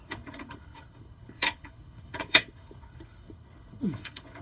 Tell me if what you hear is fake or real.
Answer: fake